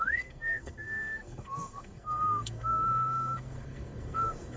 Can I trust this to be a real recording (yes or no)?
no